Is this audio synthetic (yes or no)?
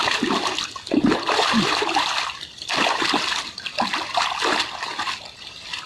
no